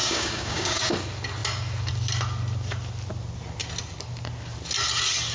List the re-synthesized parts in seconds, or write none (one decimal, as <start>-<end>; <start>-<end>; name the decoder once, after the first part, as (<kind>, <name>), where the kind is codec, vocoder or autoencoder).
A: 0.0-0.9 (codec, DAC)